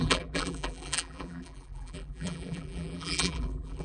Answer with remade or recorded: remade